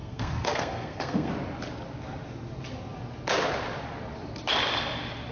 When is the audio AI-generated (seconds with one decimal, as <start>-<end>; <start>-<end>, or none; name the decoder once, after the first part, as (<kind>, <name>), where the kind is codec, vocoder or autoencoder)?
0.0-1.3 (codec, SNAC)